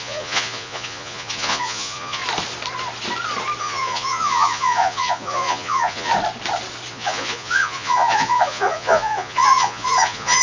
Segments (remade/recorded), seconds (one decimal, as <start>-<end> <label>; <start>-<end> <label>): 0.0-2.2 remade; 2.2-3.6 recorded; 3.6-6.1 remade; 6.1-6.9 recorded; 6.9-10.4 remade